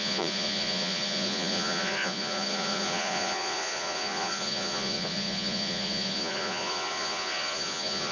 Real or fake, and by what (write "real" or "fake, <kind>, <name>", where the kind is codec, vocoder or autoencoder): fake, vocoder, Vocos